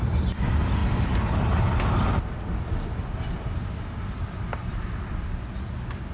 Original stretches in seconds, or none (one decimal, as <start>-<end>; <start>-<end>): 0.0-6.1